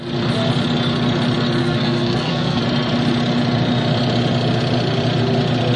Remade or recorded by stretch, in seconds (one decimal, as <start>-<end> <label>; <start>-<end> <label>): 0.0-1.6 recorded; 1.6-2.6 remade; 2.6-5.8 recorded